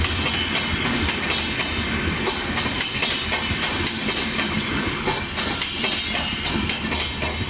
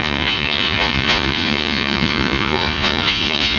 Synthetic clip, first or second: second